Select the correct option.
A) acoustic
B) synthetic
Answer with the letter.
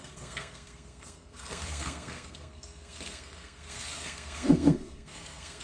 B